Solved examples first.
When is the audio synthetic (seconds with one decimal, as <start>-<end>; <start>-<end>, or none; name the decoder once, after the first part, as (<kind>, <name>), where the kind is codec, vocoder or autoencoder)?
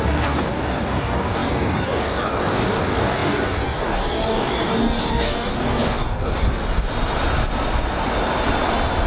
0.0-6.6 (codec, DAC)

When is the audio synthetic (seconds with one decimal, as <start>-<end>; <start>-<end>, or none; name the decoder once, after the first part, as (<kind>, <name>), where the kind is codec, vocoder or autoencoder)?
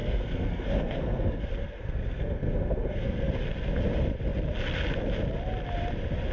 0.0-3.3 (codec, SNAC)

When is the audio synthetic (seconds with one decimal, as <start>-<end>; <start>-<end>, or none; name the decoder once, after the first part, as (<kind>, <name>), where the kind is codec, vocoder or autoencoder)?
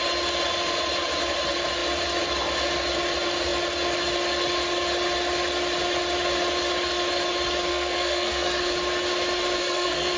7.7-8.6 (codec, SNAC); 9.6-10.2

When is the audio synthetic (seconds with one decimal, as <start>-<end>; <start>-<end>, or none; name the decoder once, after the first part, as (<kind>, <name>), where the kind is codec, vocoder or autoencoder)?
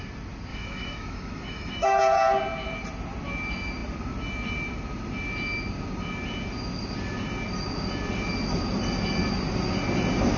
0.5-2.0 (autoencoder, DAC-VAE)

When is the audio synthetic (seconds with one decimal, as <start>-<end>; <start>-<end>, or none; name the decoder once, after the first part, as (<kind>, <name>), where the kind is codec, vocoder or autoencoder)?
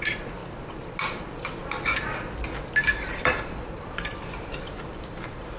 2.8-5.6 (vocoder, BigVGAN v2)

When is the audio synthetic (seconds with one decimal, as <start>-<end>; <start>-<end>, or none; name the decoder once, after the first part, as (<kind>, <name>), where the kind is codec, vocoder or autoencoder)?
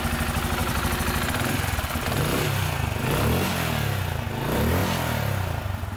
0.6-3.5 (vocoder, BigVGAN v2)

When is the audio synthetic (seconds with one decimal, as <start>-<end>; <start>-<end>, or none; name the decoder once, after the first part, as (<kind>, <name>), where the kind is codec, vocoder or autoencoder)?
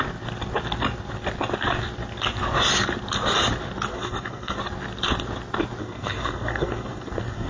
3.9-4.6 (codec, SNAC); 5.8-7.5